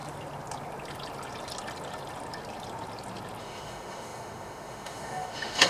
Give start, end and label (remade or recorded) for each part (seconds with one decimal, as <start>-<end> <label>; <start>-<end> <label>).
0.0-3.4 recorded; 3.4-5.7 remade